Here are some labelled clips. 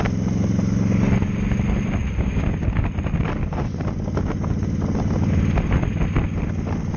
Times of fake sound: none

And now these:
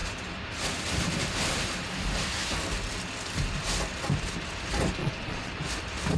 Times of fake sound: 5.0-5.5 (vocoder, Vocos)

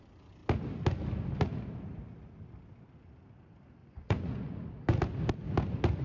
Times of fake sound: 3.8-4.6 (vocoder, Vocos)

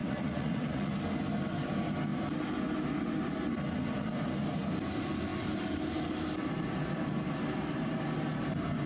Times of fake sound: 0.0-0.9 (vocoder, Vocos)

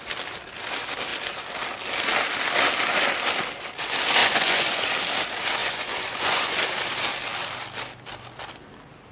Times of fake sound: 4.2-4.8 (vocoder, Vocos); 5.6-6.6

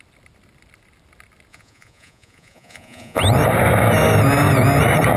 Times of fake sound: 1.5-3.2 (vocoder, Vocos)